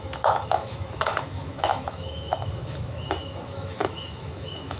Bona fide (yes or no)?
no